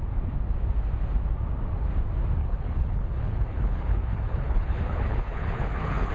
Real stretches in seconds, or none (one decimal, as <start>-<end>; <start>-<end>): 0.0-2.4